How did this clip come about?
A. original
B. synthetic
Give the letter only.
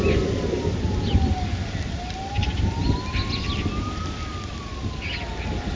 A